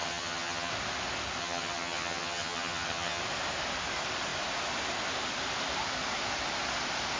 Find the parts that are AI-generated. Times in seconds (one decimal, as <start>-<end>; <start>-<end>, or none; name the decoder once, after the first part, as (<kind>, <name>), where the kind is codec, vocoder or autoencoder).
0.0-0.7 (vocoder, HiFi-GAN); 1.4-3.2